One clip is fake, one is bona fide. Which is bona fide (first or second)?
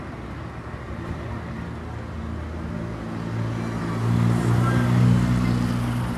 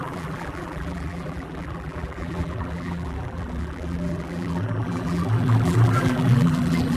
first